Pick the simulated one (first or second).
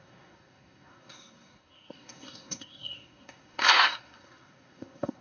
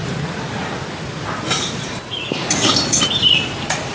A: first